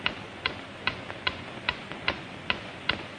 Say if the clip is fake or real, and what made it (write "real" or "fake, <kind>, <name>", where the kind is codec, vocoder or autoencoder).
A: fake, vocoder, Vocos